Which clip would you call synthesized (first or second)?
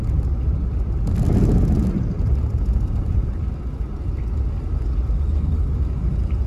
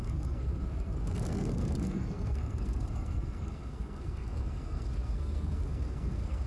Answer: second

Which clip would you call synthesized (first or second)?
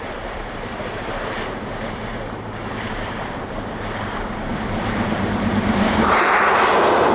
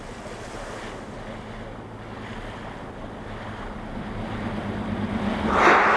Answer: first